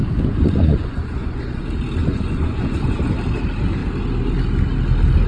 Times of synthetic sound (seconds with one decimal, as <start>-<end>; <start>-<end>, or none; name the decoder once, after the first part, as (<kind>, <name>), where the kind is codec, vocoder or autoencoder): 0.0-1.6 (vocoder, Vocos); 2.0-3.1